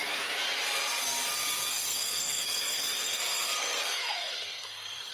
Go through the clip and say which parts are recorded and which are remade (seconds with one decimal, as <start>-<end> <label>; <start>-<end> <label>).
0.0-1.7 recorded; 1.7-5.1 remade